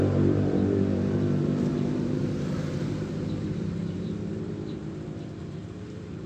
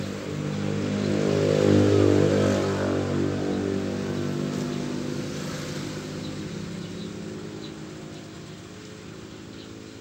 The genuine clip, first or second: second